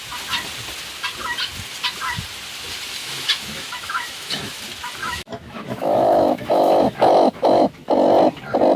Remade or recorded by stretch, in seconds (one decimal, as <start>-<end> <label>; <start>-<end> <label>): 0.0-3.0 recorded; 3.0-4.6 remade; 4.6-5.0 recorded; 5.0-7.7 remade; 7.7-8.8 recorded